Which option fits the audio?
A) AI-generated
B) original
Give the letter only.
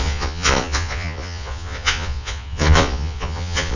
A